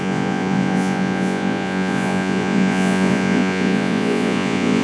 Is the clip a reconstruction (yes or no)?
yes